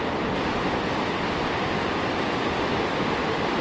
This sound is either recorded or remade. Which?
recorded